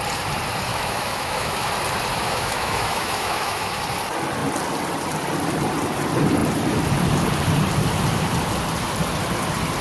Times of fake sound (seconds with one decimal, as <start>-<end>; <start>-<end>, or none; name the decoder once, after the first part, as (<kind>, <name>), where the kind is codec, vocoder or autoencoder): 0.7-1.7 (autoencoder, DAC-VAE); 2.1-3.7